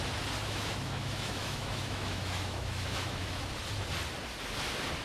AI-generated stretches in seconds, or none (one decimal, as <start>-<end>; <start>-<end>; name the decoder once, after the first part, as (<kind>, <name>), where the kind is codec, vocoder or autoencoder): 0.4-3.4 (autoencoder, DAC-VAE)